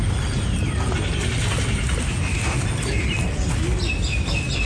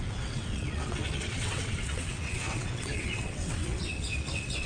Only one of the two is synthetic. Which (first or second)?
second